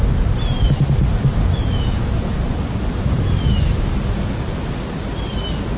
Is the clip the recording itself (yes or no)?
yes